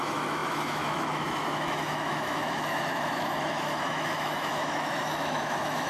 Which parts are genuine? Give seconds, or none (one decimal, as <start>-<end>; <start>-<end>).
none